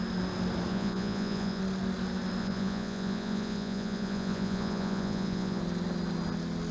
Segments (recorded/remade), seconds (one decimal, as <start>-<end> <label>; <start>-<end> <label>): 0.0-0.7 recorded; 0.7-1.6 remade; 1.6-2.4 recorded; 2.4-5.6 remade; 5.6-6.7 recorded